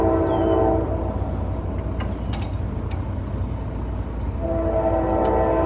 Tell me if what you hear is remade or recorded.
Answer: recorded